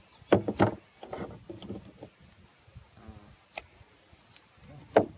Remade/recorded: recorded